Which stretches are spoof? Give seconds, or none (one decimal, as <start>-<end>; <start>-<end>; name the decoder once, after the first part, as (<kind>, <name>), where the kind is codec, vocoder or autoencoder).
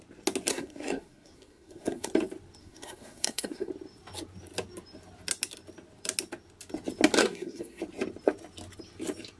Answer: 0.5-2.1 (codec, SNAC); 2.6-3.7; 7.2-7.8